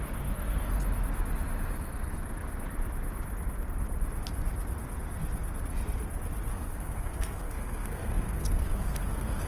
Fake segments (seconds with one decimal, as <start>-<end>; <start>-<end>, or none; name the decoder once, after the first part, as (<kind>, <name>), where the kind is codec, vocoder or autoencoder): 6.5-9.5 (codec, SNAC)